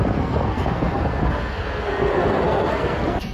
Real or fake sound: fake